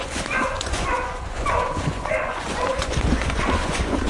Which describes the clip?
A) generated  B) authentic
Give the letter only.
A